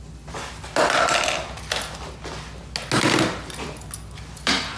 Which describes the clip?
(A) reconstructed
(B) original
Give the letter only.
B